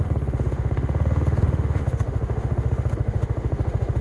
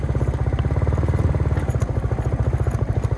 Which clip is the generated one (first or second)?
first